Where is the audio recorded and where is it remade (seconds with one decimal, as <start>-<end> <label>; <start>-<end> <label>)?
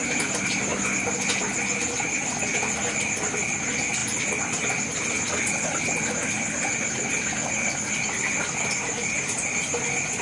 0.0-10.2 recorded